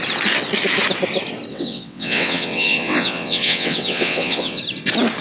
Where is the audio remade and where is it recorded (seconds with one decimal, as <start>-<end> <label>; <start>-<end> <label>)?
0.0-1.5 recorded; 1.5-4.6 remade; 4.6-5.2 recorded